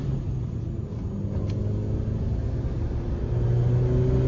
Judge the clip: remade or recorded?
recorded